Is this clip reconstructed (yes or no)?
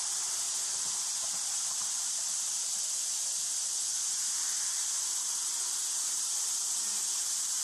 yes